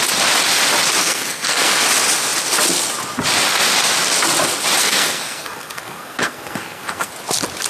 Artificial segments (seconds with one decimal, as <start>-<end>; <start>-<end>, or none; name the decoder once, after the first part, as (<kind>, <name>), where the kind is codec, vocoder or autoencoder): 1.0-1.8 (codec, SNAC); 4.8-7.1